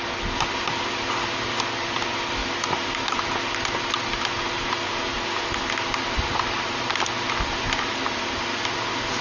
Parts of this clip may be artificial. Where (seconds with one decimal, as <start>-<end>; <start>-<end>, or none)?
none

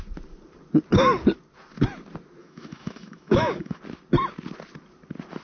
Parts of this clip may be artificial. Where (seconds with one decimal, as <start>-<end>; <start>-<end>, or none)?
2.4-3.8